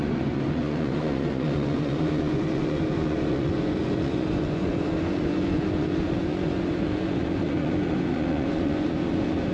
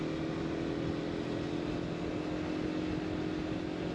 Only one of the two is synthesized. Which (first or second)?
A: first